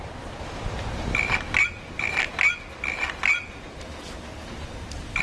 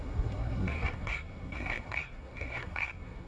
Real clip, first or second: first